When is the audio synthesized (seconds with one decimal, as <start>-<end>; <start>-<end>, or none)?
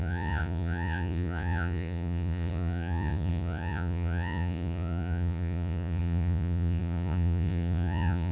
0.0-8.3